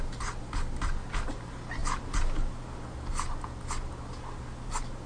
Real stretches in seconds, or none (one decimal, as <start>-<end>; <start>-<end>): 0.0-5.1